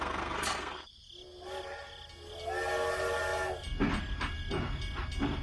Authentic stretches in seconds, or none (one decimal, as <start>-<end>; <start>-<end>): 0.9-5.4